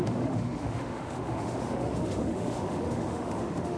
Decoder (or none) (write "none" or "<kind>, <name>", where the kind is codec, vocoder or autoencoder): autoencoder, DAC-VAE